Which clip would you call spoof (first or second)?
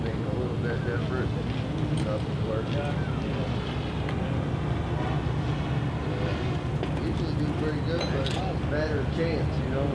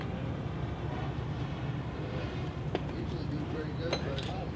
second